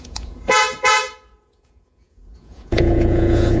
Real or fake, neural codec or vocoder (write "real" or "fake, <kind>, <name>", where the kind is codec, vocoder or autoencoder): fake, vocoder, Vocos